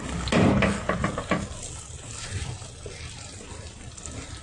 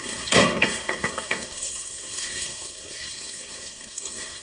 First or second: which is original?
first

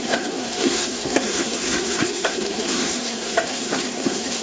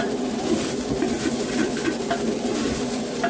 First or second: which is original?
second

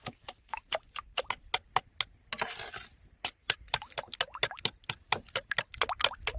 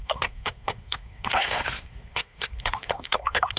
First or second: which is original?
first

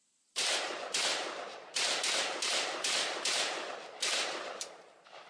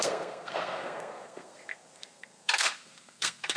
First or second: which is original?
first